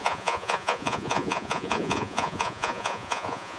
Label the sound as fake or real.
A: fake